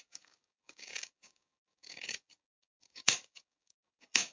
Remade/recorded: remade